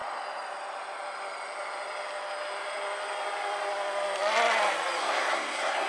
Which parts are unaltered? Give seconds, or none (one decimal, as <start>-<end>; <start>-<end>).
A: 0.0-5.0